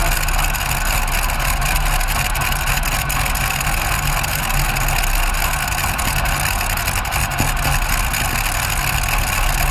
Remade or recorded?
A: recorded